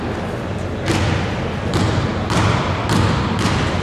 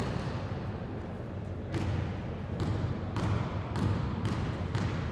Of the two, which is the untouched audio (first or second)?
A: first